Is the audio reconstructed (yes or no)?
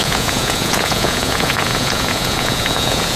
yes